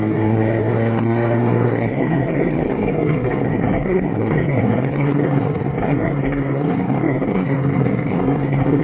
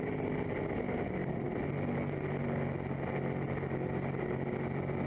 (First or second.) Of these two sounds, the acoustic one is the second